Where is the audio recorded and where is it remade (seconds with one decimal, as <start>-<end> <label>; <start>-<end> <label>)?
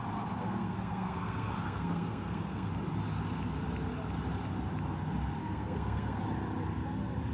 0.0-0.4 recorded; 0.4-2.7 remade; 2.7-5.4 recorded; 5.4-6.2 remade; 6.2-7.3 recorded